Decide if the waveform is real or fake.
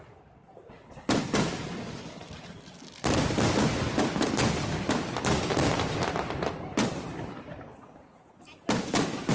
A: real